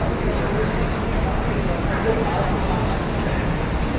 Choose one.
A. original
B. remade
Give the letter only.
A